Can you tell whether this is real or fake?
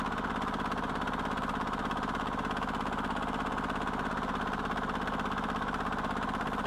real